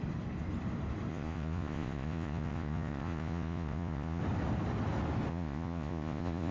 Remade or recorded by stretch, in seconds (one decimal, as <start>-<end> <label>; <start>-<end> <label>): 0.0-1.1 recorded; 1.1-4.2 remade; 4.2-5.3 recorded; 5.3-6.5 remade